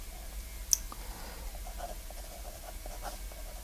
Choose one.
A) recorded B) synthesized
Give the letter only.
A